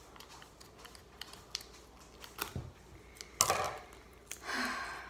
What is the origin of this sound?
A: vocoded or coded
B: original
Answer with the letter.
B